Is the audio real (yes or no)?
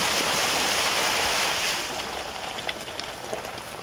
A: no